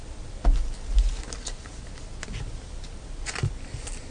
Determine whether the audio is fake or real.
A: real